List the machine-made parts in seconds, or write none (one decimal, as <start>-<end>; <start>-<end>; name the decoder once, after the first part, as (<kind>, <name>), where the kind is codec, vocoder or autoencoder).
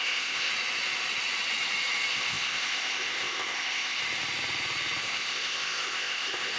0.0-0.5 (codec, ZipCodec); 2.1-4.0; 5.0-6.6